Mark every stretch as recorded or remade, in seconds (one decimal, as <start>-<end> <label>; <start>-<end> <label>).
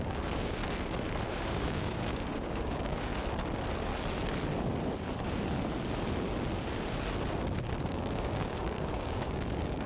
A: 0.0-0.6 remade; 0.6-1.3 recorded; 1.3-3.1 remade; 3.1-7.9 recorded; 7.9-9.9 remade